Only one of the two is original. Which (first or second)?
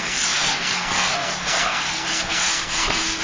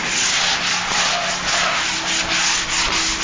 second